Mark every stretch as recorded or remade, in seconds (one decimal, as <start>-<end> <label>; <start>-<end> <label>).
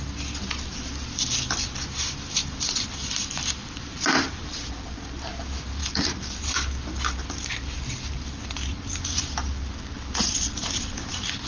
0.0-0.7 recorded; 0.7-5.3 remade; 5.3-5.8 recorded; 5.8-9.8 remade; 9.8-11.5 recorded